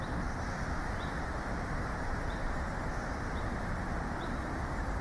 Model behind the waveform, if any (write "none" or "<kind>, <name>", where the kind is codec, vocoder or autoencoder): none